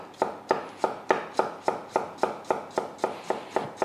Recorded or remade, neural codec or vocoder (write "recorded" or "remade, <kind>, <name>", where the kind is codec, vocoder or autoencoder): recorded